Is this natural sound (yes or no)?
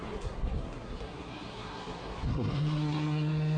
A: no